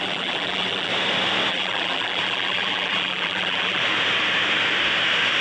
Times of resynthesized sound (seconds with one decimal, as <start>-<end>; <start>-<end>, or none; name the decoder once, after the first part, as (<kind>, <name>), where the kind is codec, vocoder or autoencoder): 0.0-0.9 (vocoder, BigVGAN v2); 1.5-3.8